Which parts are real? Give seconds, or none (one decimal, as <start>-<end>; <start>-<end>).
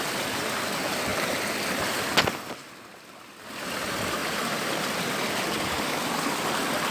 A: 0.0-4.2; 5.6-6.9